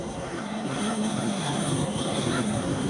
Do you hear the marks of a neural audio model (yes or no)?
yes